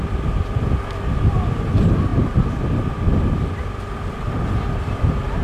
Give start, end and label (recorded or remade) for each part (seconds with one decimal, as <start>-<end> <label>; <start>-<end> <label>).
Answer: 0.0-5.4 recorded

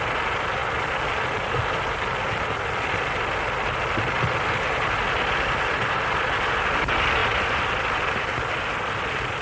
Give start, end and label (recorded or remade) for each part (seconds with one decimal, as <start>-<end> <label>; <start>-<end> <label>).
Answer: 0.0-9.4 recorded

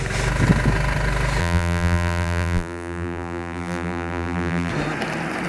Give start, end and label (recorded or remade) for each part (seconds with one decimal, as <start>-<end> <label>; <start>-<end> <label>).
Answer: 0.0-1.4 recorded; 1.4-4.7 remade; 4.7-5.5 recorded

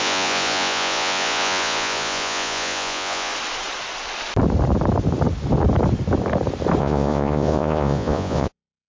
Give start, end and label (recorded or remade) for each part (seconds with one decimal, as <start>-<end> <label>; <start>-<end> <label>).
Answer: 0.0-3.3 remade; 3.3-6.8 recorded; 6.8-8.9 remade

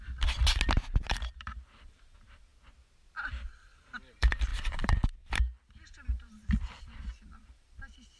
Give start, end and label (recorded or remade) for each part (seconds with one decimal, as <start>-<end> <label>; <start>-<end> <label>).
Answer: 0.0-0.4 remade; 0.4-1.1 recorded; 1.1-2.5 remade; 2.5-3.3 recorded; 3.3-8.2 remade

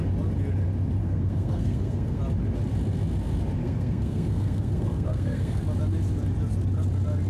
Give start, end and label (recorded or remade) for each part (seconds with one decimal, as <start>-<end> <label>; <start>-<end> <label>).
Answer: 0.0-1.0 recorded; 1.0-2.2 remade; 2.2-3.6 recorded; 3.6-5.6 remade; 5.6-7.3 recorded

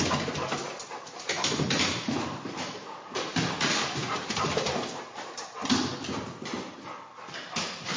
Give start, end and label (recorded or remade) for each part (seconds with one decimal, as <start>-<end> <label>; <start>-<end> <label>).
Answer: 0.0-0.8 recorded; 0.8-5.5 remade; 5.5-8.0 recorded